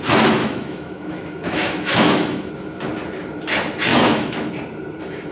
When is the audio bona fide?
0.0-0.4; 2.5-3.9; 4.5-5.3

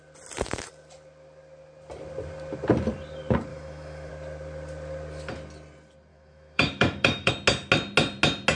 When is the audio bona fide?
0.0-3.5; 4.1-6.1; 7.3-8.6